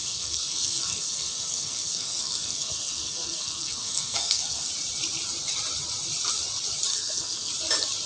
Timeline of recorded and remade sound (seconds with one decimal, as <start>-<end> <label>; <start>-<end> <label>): 0.0-4.7 remade; 4.7-6.9 recorded; 6.9-7.5 remade; 7.5-8.1 recorded

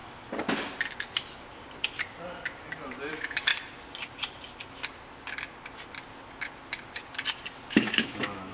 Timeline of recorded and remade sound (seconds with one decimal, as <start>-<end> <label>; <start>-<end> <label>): 0.0-3.1 recorded; 3.1-3.5 remade; 3.5-7.7 recorded; 7.7-8.5 remade

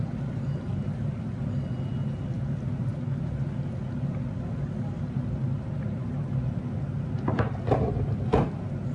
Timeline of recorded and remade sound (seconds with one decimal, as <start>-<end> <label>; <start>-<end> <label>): 0.0-8.9 recorded

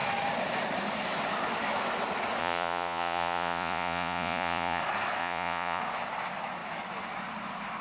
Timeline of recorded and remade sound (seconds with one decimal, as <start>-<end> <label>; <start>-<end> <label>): 0.0-2.4 recorded; 2.4-4.8 remade; 4.8-5.2 recorded; 5.2-5.8 remade; 5.8-7.8 recorded

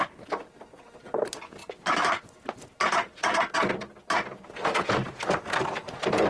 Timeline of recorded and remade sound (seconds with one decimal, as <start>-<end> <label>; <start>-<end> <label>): 0.0-1.6 recorded; 1.6-2.3 remade; 2.3-6.3 recorded